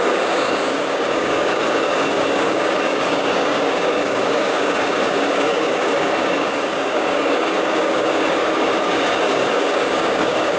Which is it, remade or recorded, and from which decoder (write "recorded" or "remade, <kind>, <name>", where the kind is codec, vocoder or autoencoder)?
remade, codec, DAC